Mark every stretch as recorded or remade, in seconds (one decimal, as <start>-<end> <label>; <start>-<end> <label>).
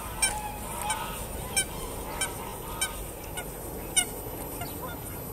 0.0-5.3 recorded